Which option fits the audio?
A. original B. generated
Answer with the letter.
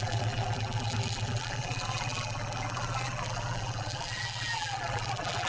B